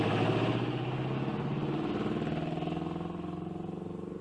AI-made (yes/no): no